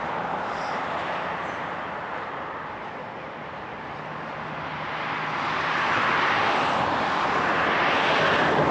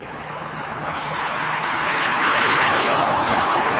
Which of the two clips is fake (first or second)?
second